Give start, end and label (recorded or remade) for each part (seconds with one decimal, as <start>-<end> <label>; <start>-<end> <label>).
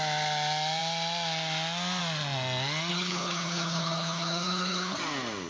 0.0-2.9 recorded; 2.9-5.0 remade; 5.0-5.5 recorded